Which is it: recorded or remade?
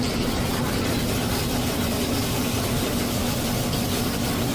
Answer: recorded